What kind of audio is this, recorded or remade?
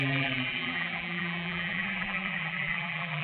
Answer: remade